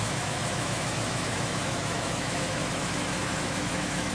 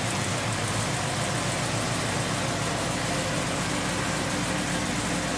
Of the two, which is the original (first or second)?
second